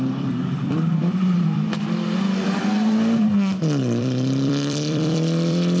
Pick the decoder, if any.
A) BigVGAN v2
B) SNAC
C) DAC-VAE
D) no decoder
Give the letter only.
A